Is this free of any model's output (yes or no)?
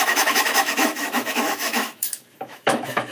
no